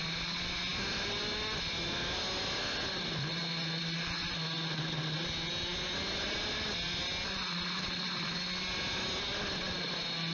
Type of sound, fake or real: real